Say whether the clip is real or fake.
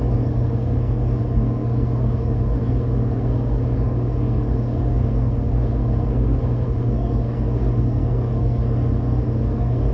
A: fake